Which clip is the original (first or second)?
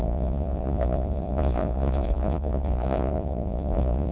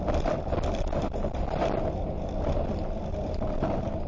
second